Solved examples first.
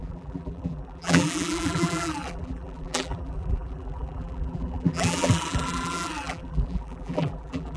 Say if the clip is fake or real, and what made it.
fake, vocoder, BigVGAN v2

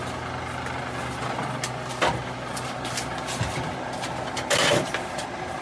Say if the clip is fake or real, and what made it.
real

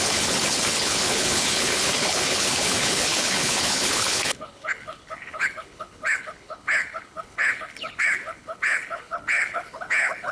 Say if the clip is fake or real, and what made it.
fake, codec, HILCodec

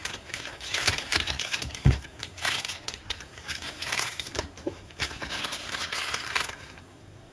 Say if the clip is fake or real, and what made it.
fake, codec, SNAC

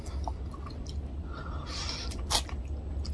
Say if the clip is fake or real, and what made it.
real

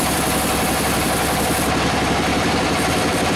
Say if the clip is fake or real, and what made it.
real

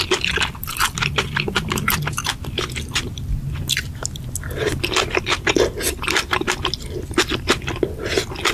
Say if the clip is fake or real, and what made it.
real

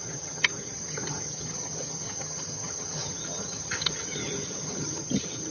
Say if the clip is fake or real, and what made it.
fake, vocoder, HiFi-GAN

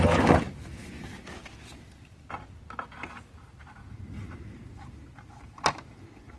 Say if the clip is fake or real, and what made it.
real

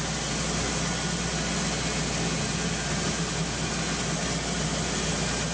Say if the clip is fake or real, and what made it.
real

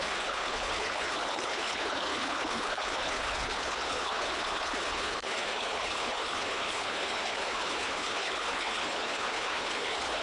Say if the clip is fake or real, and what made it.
fake, codec, HILCodec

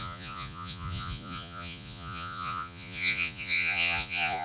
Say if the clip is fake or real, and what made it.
fake, vocoder, Vocos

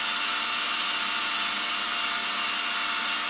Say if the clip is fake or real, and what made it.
real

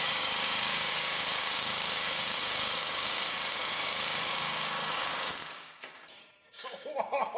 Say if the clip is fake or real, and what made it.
fake, codec, DAC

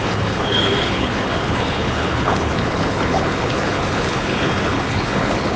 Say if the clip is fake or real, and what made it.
fake, codec, HILCodec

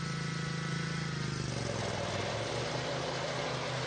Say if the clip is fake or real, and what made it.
real